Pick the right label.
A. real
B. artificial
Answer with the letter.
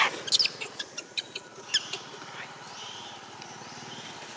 A